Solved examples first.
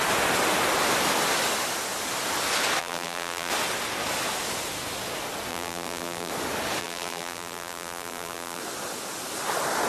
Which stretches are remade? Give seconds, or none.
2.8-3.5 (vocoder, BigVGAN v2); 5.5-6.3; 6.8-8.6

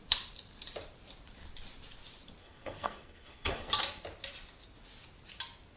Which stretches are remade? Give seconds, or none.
2.4-3.7 (codec, SNAC)

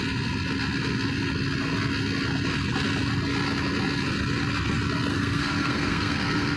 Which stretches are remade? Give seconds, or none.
5.1-6.6 (codec, SNAC)

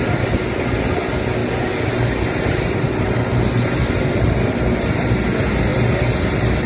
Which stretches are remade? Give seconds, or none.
none

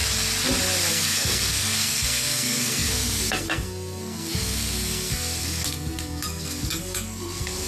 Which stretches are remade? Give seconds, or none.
0.9-7.7 (codec, SNAC)

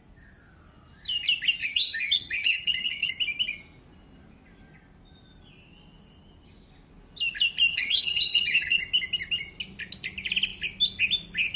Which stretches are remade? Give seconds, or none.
1.6-3.1 (vocoder, HiFi-GAN); 7.7-8.8

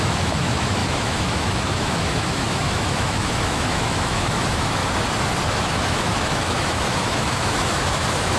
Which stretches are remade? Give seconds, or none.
0.0-4.8 (autoencoder, DAC-VAE); 5.5-8.4